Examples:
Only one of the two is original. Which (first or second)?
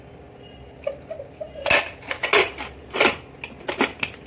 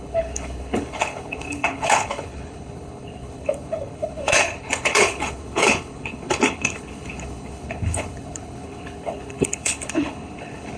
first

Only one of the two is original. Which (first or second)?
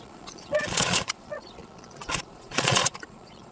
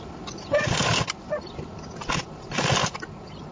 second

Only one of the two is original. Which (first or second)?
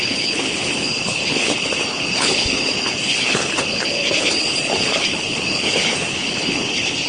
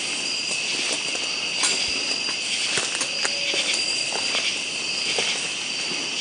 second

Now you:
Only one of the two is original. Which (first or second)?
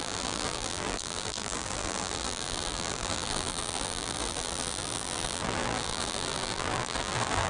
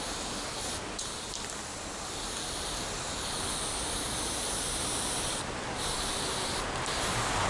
second